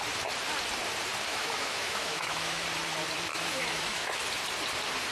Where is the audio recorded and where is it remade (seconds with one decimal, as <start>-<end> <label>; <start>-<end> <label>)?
0.0-1.3 recorded; 1.3-2.6 remade; 2.6-3.3 recorded; 3.3-4.2 remade; 4.2-5.1 recorded